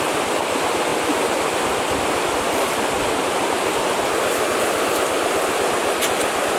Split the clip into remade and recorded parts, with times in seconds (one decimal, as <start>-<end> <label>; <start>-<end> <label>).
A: 0.0-6.6 recorded